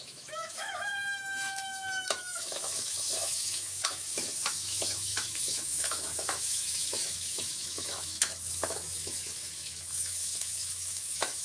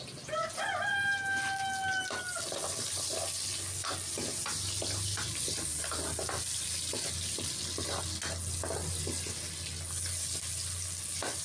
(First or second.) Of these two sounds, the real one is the second